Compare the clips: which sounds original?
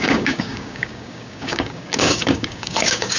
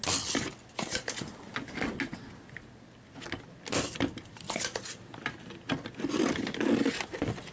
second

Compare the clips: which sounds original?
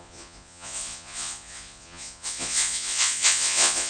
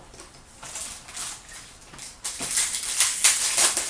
second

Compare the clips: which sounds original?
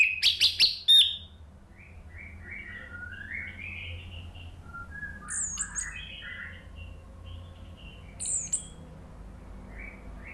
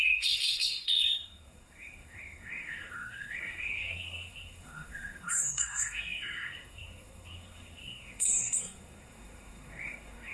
first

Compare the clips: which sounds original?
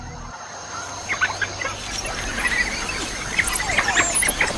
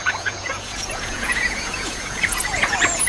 first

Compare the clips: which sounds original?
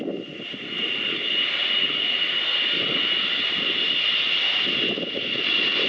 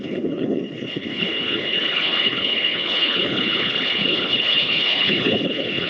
first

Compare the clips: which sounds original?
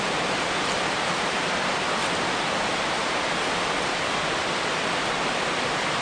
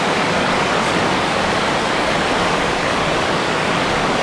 first